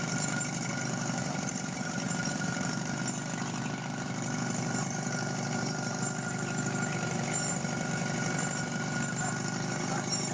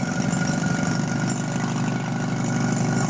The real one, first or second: second